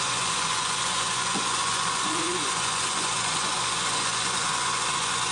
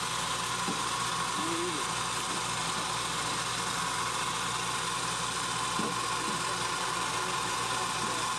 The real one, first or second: second